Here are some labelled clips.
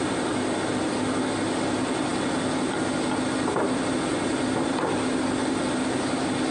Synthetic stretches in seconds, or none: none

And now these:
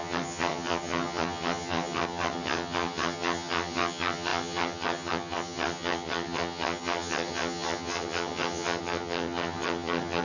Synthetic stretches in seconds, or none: 0.0-10.2

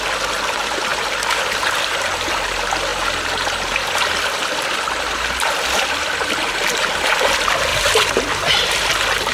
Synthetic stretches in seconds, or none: 7.7-8.9

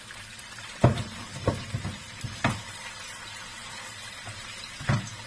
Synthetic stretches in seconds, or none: none

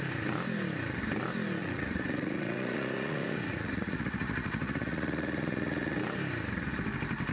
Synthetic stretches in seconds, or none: 1.6-6.0

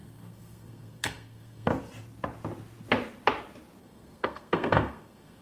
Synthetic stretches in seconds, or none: 0.0-1.7; 3.8-5.4

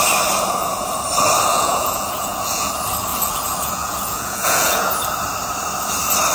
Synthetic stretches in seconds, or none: 1.5-2.7; 3.1-4.9